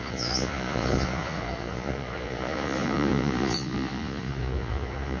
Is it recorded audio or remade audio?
remade